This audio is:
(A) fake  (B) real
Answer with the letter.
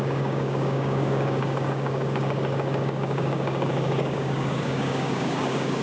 A